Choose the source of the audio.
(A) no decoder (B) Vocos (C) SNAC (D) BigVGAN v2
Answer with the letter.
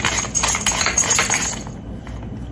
A